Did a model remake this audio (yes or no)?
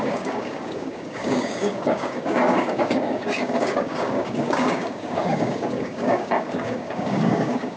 yes